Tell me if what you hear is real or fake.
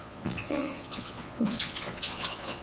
fake